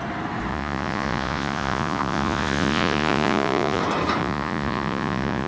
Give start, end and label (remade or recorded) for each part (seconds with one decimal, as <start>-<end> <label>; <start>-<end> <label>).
0.0-0.5 recorded; 0.5-3.8 remade; 3.8-4.2 recorded; 4.2-5.5 remade